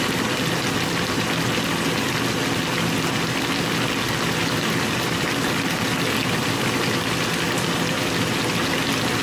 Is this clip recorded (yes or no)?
yes